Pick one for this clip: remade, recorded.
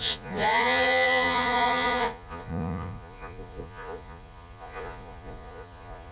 remade